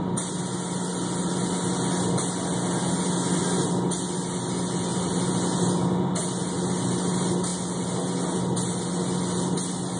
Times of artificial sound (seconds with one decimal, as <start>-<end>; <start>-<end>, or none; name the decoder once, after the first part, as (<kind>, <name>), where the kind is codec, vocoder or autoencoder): none